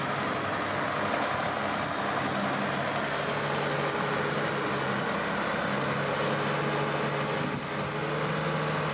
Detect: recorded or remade recorded